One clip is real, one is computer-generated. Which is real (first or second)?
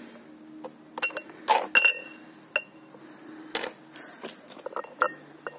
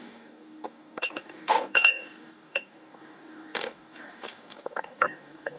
first